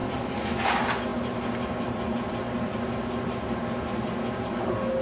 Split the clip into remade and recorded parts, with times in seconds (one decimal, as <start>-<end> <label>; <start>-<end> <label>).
0.0-5.0 recorded